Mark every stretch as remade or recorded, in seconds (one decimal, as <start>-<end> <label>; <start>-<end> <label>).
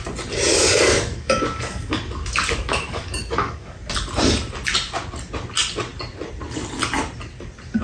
0.0-0.5 recorded; 0.5-3.9 remade; 3.9-7.8 recorded